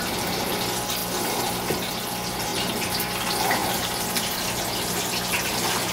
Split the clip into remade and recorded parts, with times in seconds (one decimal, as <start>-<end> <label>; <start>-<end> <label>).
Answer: 0.0-3.6 recorded; 3.6-4.4 remade; 4.4-5.9 recorded